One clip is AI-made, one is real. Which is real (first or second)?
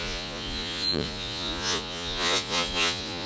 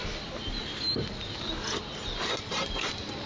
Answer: second